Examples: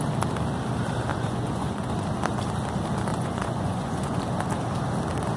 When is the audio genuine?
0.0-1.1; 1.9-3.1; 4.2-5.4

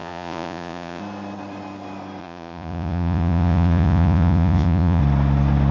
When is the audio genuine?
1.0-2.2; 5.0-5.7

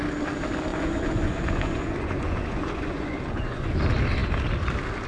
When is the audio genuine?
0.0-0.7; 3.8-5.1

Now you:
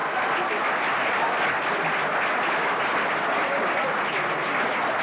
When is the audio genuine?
0.0-5.0

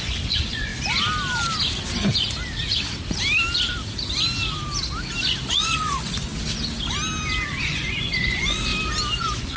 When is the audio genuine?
0.7-5.5; 6.3-7.6; 8.7-9.2

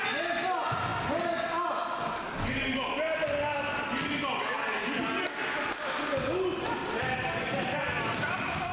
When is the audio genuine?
0.0-8.7

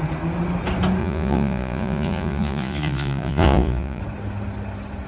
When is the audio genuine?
0.0-1.0; 4.0-5.1